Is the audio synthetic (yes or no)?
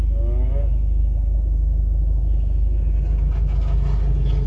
no